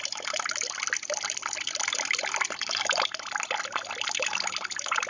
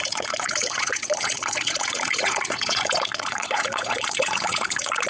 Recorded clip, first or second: first